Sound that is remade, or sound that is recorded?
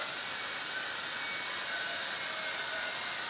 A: recorded